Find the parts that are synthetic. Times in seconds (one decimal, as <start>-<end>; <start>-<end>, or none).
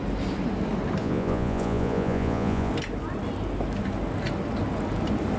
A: 1.0-2.7